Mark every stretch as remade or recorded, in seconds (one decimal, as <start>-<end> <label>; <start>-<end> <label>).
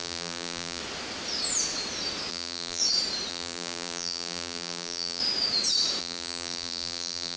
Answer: 0.0-0.8 remade; 0.8-2.3 recorded; 2.3-2.8 remade; 2.8-3.3 recorded; 3.3-5.2 remade; 5.2-6.0 recorded; 6.0-7.4 remade